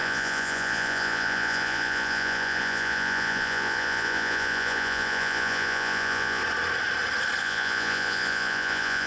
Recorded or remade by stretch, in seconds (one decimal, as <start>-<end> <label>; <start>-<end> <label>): 0.0-6.4 remade; 6.4-7.4 recorded; 7.4-9.1 remade